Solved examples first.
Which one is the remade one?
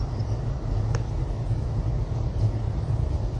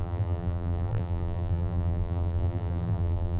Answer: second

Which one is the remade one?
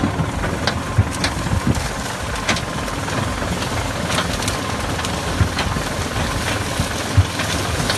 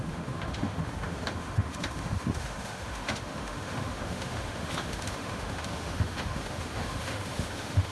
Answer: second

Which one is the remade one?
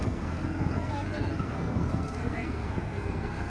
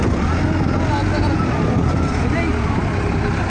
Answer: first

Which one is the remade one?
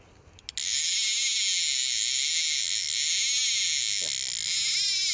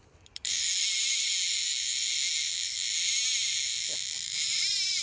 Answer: second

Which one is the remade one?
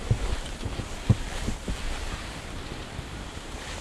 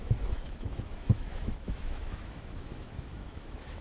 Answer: second